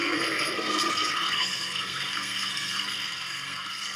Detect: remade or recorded remade